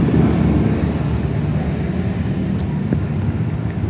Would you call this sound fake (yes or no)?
no